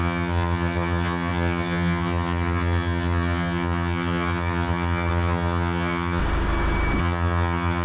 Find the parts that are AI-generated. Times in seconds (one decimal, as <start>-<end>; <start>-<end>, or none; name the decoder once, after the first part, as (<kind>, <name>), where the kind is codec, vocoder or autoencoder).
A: 0.0-6.2 (vocoder, HiFi-GAN); 7.0-7.8